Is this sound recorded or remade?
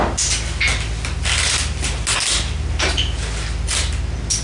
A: recorded